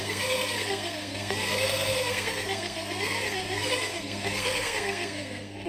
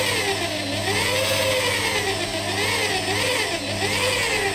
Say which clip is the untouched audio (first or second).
second